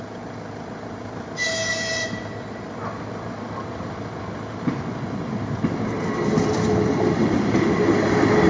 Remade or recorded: recorded